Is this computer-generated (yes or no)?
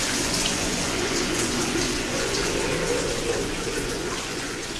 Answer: yes